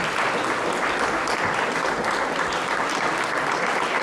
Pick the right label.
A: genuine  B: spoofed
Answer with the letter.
A